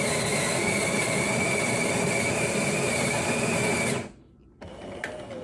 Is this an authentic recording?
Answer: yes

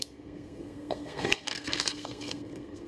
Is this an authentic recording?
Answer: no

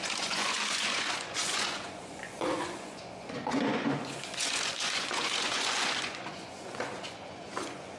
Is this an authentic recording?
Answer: no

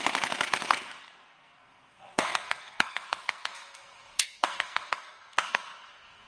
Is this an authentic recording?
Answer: no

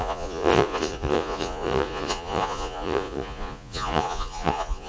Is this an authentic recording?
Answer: no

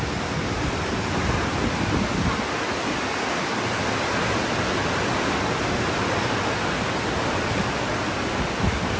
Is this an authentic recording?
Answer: yes